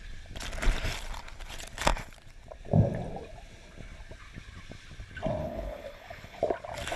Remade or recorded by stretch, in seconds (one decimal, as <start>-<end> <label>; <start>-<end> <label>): 0.0-5.4 recorded; 5.4-6.4 remade; 6.4-7.0 recorded